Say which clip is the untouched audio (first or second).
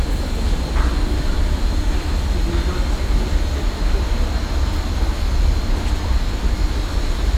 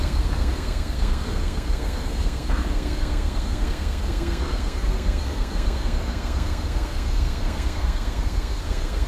first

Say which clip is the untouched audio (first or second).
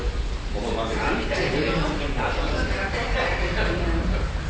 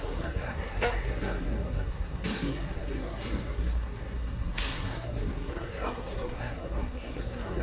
first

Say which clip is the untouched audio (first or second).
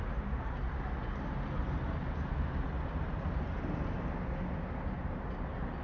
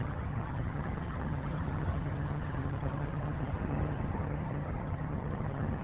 first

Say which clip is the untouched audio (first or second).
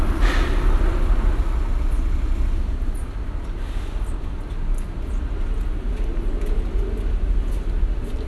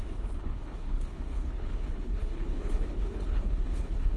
first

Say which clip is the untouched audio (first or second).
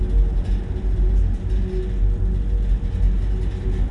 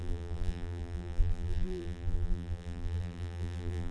first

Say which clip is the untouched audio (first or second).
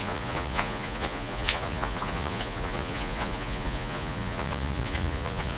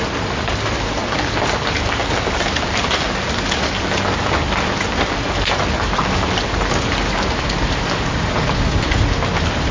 second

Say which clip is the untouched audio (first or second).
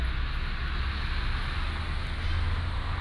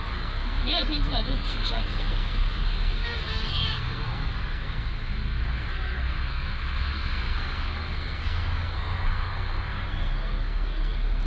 first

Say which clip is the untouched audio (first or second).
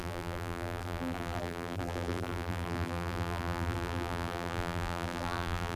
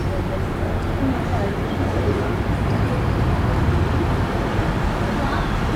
second